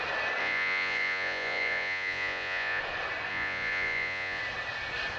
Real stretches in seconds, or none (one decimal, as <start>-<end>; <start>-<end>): 0.0-0.4; 2.8-3.3; 4.4-5.2